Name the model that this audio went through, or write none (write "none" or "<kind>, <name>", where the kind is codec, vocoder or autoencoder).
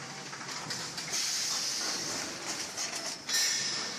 none